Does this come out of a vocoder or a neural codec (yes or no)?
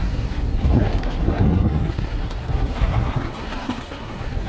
yes